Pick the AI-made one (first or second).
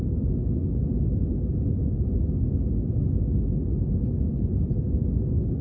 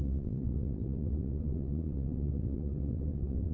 second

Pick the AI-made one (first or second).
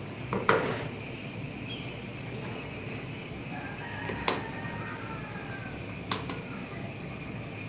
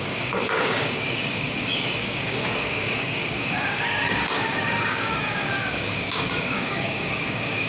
second